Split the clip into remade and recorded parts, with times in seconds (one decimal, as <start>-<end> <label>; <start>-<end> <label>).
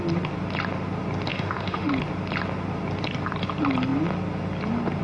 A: 0.0-1.3 recorded; 1.3-1.9 remade; 1.9-5.0 recorded